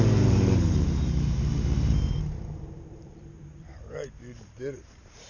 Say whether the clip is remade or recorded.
remade